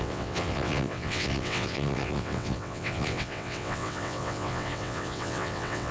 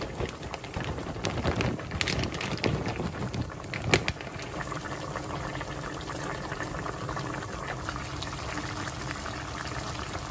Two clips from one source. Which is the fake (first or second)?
first